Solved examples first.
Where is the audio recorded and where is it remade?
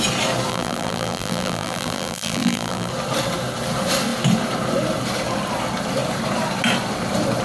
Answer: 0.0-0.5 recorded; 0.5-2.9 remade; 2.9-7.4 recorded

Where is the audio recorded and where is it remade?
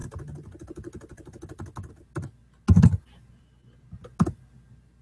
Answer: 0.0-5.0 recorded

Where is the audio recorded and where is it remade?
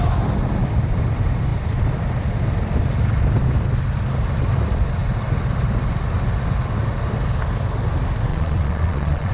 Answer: 0.0-8.3 recorded; 8.3-9.3 remade